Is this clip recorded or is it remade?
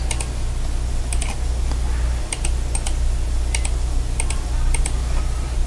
recorded